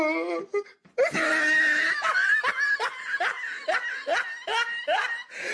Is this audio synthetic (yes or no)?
no